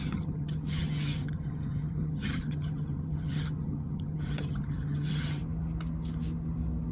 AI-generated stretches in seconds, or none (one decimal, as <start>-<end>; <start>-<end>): 0.0-5.4